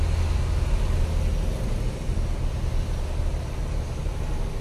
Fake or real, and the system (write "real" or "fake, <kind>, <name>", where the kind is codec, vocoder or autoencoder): real